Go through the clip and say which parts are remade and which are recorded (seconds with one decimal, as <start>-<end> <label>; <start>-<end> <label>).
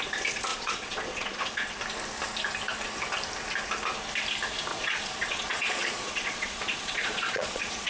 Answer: 0.0-0.5 recorded; 0.5-1.8 remade; 1.8-4.7 recorded; 4.7-7.9 remade